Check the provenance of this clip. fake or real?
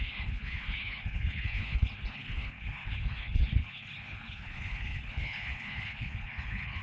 fake